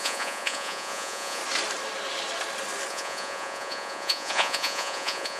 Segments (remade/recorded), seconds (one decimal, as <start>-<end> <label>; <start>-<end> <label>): 0.0-1.4 remade; 1.4-2.9 recorded; 2.9-5.4 remade